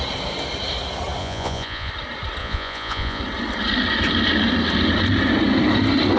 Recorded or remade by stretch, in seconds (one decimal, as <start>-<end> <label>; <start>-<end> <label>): 0.0-1.2 recorded; 1.2-1.9 remade; 1.9-2.4 recorded; 2.4-3.2 remade; 3.2-6.2 recorded